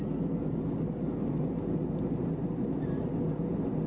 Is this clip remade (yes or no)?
no